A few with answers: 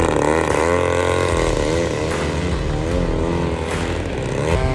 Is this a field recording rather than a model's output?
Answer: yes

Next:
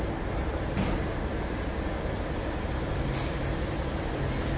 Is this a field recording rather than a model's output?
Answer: yes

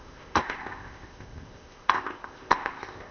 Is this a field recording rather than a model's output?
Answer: no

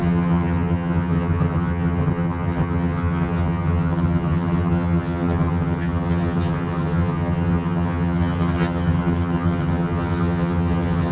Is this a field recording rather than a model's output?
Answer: no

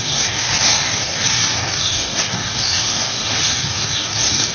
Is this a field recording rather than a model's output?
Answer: no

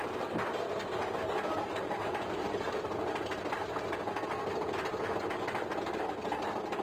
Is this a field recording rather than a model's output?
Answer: yes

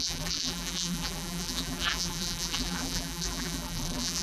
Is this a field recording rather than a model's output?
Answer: no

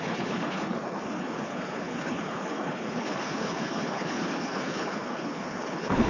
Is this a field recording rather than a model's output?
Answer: no